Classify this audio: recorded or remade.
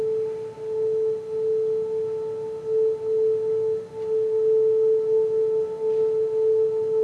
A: recorded